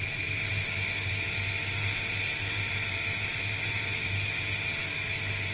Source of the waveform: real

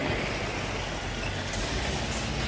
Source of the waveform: real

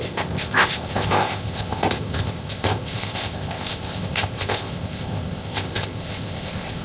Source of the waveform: fake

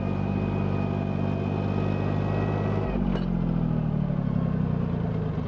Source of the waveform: real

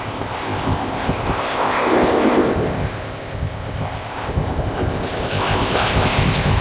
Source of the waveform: fake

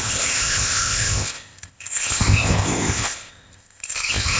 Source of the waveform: fake